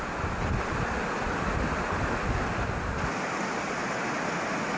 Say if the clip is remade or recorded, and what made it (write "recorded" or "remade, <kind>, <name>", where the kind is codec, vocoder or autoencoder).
recorded